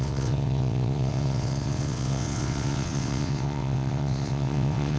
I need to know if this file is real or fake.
fake